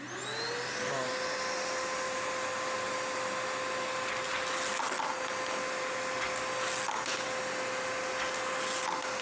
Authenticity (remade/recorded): recorded